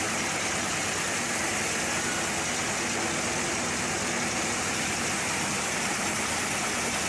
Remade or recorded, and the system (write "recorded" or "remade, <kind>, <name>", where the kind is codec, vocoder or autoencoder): recorded